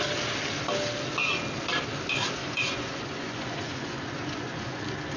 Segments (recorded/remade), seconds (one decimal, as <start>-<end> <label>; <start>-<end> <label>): 0.0-2.4 recorded; 2.4-4.8 remade; 4.8-5.2 recorded